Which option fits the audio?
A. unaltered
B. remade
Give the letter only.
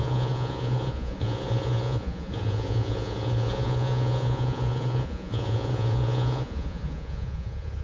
B